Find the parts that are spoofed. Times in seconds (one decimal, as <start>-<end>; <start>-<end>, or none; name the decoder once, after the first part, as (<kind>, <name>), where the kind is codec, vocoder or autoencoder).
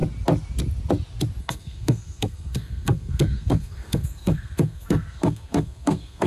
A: 1.4-6.3 (codec, SNAC)